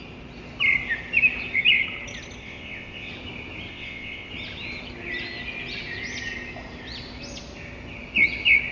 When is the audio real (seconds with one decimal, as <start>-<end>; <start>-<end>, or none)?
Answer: 0.0-2.4; 3.1-3.7; 4.3-8.7